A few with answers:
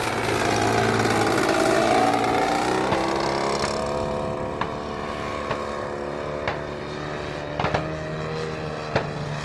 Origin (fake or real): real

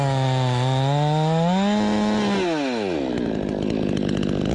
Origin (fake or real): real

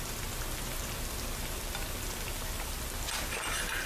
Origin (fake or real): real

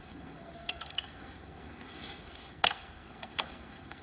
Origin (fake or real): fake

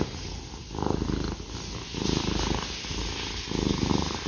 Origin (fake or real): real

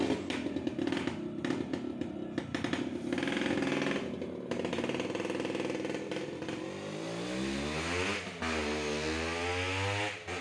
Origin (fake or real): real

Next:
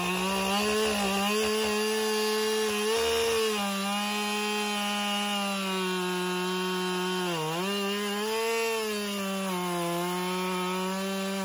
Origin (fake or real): real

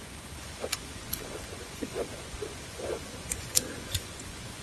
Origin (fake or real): fake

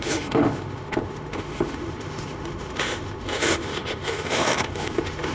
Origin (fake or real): fake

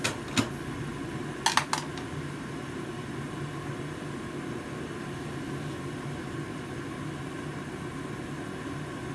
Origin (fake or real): real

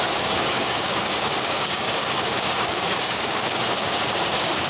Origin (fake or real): fake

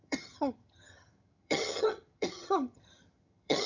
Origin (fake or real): fake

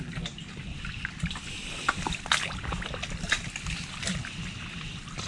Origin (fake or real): real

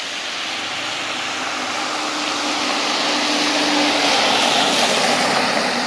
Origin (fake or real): real